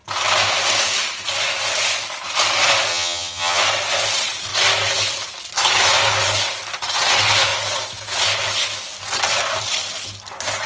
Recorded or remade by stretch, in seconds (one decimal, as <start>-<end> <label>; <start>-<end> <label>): 0.0-2.9 recorded; 2.9-3.6 remade; 3.6-10.7 recorded